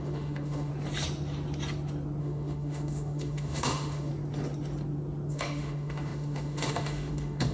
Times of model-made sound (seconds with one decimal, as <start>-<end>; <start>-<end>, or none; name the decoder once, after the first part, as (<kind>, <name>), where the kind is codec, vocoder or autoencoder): 0.0-0.7 (autoencoder, DAC-VAE); 2.2-4.1; 5.3-7.5